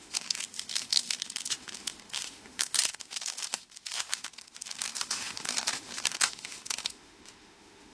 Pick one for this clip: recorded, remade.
remade